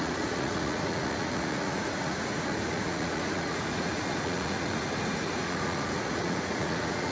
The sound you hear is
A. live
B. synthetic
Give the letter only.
B